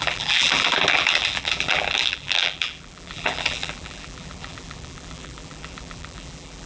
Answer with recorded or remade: remade